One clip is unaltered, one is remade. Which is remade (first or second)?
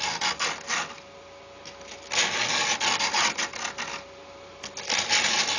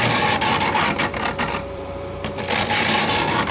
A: second